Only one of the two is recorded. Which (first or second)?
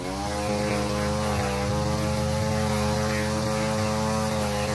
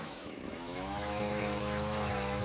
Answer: first